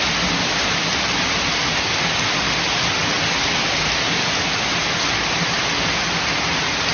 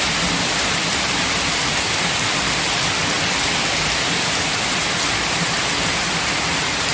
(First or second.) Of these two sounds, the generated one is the second